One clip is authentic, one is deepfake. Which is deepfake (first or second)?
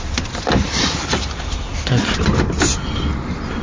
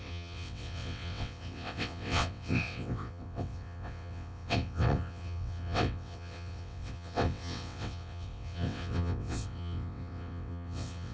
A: second